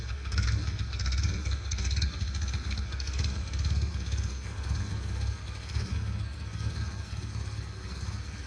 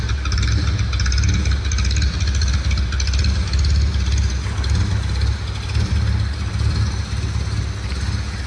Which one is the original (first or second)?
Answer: second